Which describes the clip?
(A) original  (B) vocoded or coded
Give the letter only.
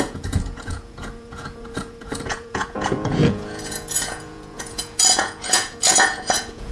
B